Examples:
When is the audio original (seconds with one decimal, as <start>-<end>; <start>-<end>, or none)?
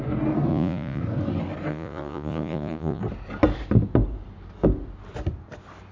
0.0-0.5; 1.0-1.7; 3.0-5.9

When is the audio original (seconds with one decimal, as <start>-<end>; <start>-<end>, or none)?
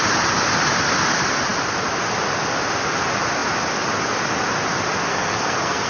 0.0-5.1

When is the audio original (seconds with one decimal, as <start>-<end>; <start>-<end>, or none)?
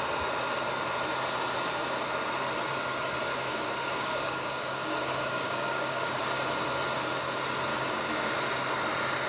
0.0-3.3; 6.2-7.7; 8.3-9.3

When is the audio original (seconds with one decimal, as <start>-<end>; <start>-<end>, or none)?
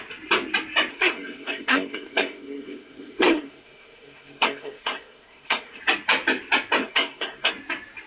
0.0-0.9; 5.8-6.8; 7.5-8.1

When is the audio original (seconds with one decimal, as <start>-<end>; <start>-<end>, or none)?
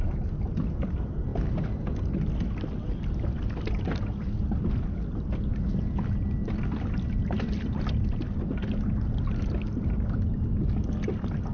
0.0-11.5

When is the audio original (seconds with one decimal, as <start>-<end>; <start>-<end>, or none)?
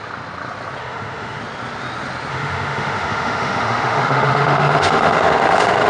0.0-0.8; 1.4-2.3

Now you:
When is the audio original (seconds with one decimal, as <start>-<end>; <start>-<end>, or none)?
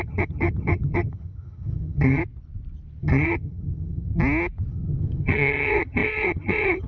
2.2-3.0; 4.1-4.7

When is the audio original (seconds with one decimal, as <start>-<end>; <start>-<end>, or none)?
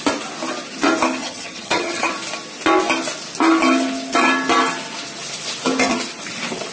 0.0-1.2; 2.1-6.7